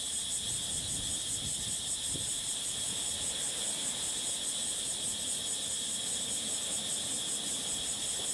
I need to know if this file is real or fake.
real